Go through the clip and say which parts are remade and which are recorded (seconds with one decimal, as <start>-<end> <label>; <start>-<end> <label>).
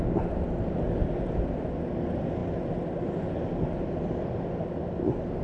0.0-5.4 recorded